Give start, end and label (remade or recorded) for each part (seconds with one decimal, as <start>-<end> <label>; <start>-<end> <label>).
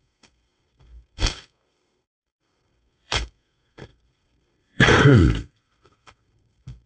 0.0-6.9 remade